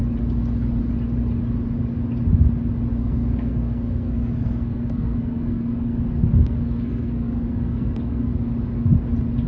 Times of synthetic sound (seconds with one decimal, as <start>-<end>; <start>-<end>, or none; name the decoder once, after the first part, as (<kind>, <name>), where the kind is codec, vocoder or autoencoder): 3.0-8.3 (codec, SNAC)